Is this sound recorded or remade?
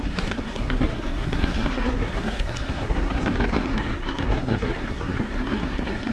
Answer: remade